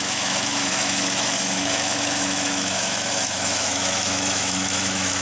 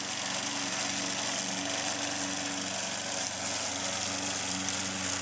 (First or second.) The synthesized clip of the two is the first